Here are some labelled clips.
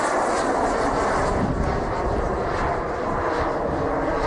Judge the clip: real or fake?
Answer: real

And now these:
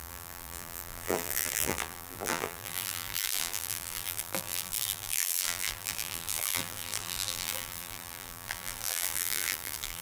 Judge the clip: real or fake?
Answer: fake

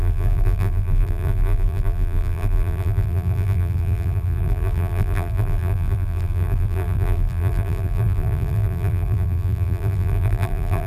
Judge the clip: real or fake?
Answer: fake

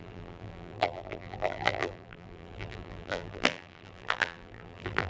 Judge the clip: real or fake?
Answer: fake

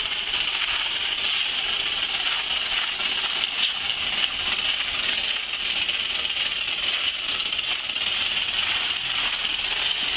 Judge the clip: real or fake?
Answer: fake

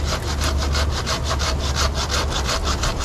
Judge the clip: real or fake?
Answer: real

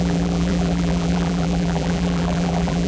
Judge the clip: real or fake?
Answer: fake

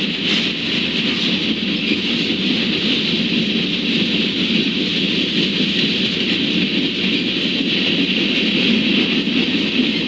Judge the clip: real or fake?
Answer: real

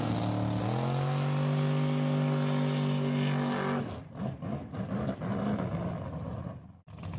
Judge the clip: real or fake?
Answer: real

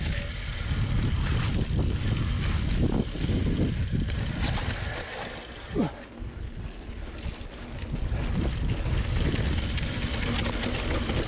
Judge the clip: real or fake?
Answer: real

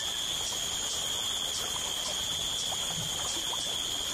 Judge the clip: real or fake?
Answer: real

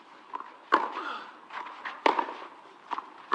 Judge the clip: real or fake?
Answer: real